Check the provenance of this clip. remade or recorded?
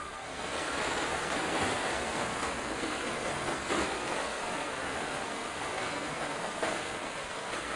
remade